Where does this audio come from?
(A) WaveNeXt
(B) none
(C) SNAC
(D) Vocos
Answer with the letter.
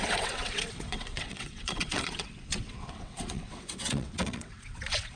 A